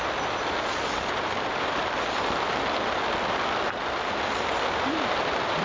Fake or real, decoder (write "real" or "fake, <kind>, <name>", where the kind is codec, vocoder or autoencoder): fake, vocoder, BigVGAN v2